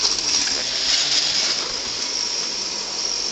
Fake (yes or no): no